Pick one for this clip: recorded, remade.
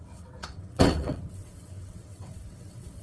remade